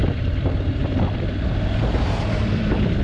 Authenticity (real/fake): fake